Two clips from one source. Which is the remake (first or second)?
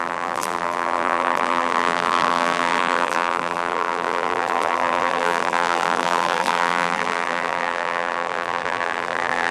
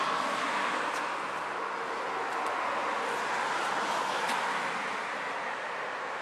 first